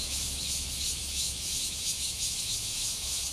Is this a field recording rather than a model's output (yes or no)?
no